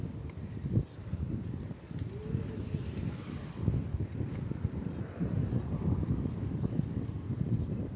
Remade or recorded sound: recorded